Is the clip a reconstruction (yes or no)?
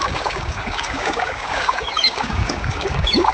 yes